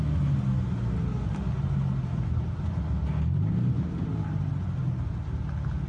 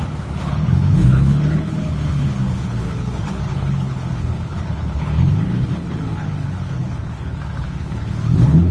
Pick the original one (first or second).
first